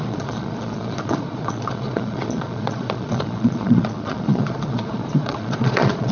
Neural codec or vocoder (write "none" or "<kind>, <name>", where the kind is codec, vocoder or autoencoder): vocoder, Vocos